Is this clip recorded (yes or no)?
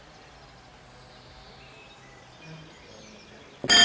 yes